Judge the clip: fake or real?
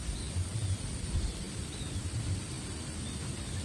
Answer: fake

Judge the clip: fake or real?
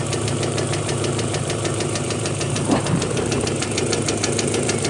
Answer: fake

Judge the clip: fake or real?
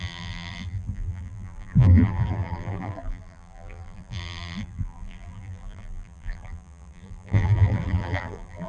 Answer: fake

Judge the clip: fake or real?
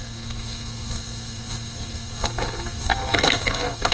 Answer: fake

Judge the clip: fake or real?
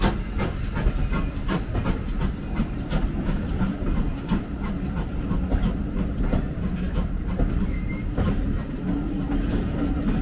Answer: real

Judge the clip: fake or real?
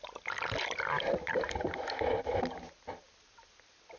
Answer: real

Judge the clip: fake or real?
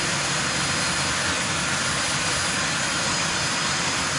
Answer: real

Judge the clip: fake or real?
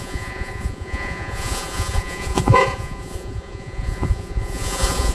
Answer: fake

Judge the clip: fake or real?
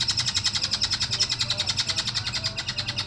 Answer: real